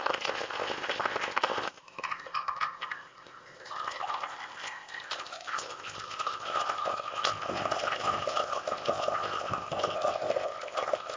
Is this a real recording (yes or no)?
no